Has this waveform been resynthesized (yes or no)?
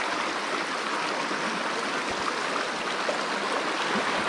no